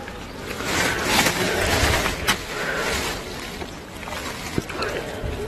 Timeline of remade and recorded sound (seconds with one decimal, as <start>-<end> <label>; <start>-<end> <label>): 0.0-2.4 recorded; 2.4-2.9 remade; 2.9-5.5 recorded